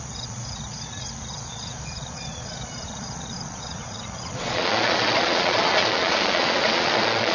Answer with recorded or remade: remade